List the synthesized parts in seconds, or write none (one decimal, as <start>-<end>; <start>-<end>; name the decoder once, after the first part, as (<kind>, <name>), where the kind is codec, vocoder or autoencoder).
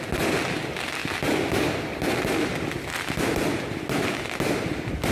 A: none